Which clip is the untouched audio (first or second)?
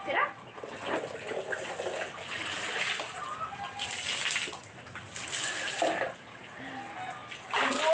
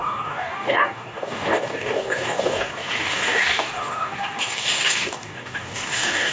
first